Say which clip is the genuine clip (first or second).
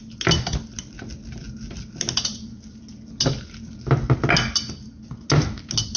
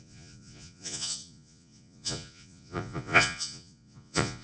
first